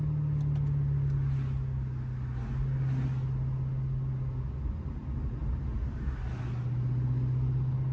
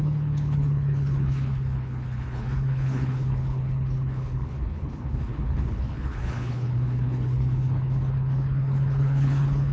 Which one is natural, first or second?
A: first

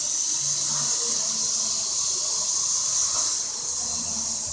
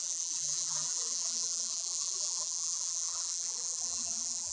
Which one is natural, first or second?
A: first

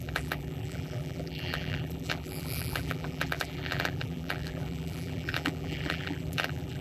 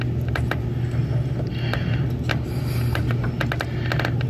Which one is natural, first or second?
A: second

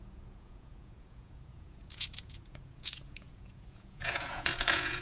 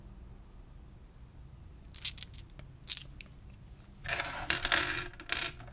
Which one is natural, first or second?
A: second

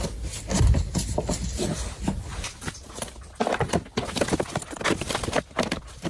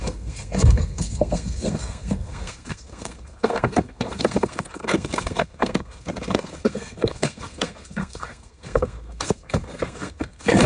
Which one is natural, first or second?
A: first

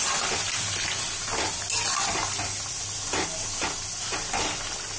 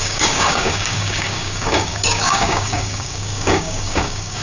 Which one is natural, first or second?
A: first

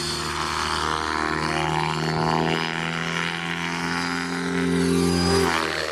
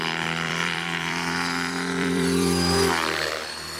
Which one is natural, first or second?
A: first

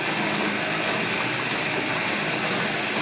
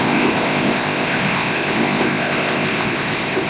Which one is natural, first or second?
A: first